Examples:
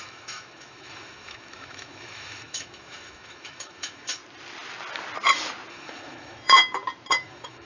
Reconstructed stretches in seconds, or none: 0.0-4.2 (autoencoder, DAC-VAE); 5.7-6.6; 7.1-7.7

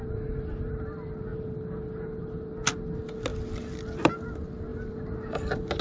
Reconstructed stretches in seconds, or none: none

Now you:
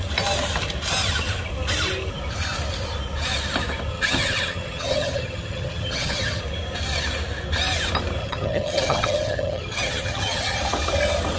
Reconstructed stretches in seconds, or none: 3.9-6.4 (vocoder, HiFi-GAN); 8.2-10.6

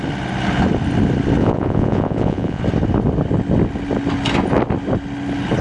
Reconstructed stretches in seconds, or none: 1.4-2.6 (vocoder, Vocos)

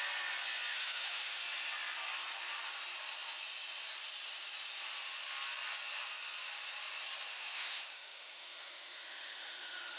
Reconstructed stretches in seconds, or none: 0.7-1.4 (autoencoder, DAC-VAE); 7.3-10.0

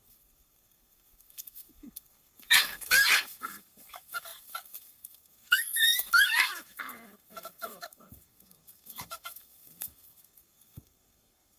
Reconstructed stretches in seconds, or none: 0.0-11.6 (codec, SNAC)

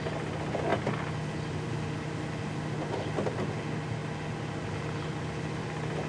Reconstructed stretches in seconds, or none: none

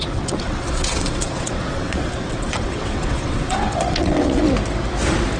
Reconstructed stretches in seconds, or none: 0.0-4.4 (vocoder, WaveNeXt)